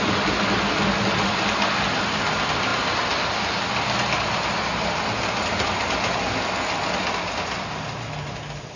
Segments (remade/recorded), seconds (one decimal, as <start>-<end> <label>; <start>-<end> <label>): 0.0-8.8 recorded